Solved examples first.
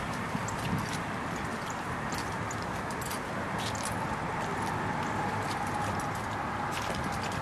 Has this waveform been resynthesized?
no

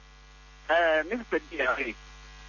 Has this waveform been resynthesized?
no